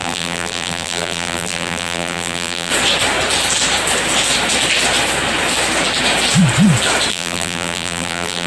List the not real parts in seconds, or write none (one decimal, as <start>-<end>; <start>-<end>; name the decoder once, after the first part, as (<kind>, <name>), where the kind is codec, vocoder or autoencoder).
0.0-2.7 (vocoder, BigVGAN v2); 7.1-8.5